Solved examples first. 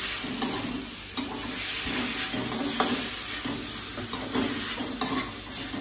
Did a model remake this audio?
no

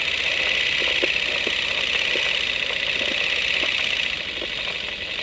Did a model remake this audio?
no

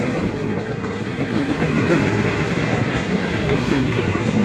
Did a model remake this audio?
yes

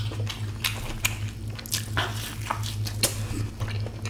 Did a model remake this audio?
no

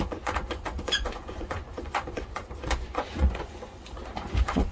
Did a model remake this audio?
yes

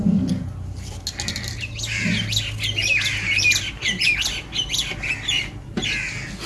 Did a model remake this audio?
no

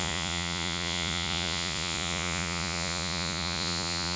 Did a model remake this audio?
yes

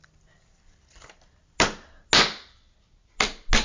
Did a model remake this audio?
no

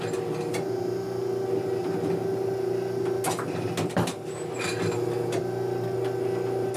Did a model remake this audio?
no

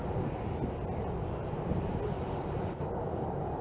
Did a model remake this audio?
no